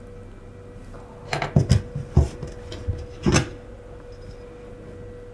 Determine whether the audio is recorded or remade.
recorded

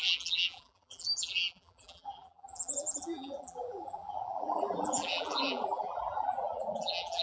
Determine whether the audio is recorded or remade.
remade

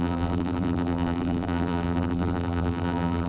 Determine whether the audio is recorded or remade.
remade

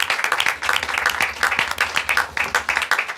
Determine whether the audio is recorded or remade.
recorded